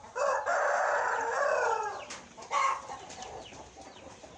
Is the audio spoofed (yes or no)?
no